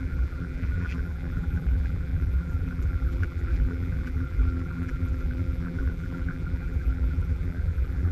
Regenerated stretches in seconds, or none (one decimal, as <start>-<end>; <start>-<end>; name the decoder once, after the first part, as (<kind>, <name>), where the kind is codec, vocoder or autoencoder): 0.0-8.1 (vocoder, BigVGAN v2)

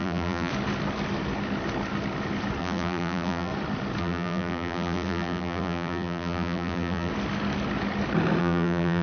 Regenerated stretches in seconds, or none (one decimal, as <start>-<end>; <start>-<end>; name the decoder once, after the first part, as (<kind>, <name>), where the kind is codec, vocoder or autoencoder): 0.0-0.5 (vocoder, BigVGAN v2); 2.6-3.5; 4.0-7.1; 8.4-9.0

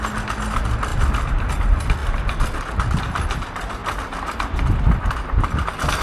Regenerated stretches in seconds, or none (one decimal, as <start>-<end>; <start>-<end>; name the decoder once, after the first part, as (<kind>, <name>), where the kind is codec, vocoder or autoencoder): none

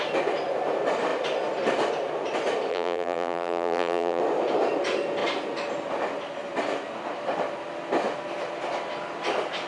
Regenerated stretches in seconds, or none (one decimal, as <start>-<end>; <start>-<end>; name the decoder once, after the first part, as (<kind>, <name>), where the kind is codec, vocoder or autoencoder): 2.7-4.2 (vocoder, BigVGAN v2)

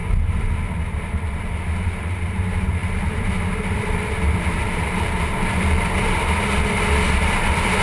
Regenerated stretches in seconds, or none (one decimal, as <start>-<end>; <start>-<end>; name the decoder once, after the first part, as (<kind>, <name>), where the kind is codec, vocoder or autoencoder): 0.0-7.8 (vocoder, BigVGAN v2)

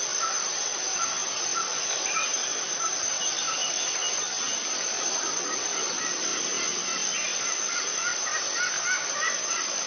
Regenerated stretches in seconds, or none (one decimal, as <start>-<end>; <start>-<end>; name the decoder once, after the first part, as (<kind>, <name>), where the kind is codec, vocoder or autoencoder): 0.0-6.3 (vocoder, BigVGAN v2); 7.4-9.9

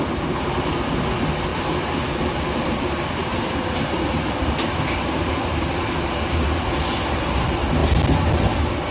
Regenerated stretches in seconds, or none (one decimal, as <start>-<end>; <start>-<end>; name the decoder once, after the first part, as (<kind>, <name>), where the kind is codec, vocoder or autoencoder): 1.5-4.0 (vocoder, BigVGAN v2)